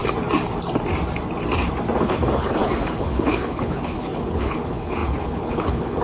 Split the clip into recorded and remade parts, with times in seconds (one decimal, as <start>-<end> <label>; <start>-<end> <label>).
0.0-2.0 recorded; 2.0-6.0 remade